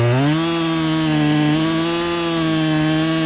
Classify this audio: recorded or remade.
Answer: recorded